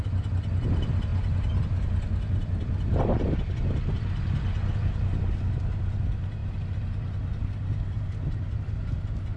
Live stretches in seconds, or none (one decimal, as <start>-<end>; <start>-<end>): 0.0-9.4